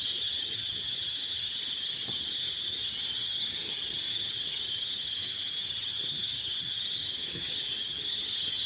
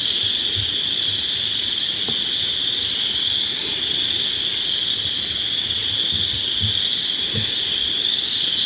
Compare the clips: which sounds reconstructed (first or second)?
first